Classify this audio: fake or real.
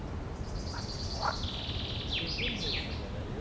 real